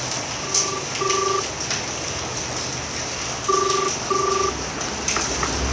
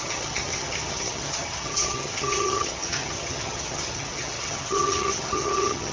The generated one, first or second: second